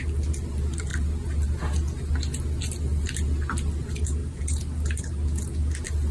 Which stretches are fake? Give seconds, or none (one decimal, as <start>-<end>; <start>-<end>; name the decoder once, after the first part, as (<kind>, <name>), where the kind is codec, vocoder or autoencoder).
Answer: none